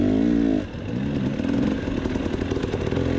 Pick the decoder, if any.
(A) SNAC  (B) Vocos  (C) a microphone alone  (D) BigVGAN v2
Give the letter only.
C